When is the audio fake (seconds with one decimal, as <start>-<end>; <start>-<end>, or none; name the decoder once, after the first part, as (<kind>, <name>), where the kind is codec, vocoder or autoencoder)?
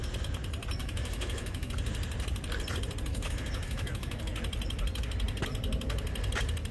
0.8-1.7 (autoencoder, DAC-VAE); 3.1-4.2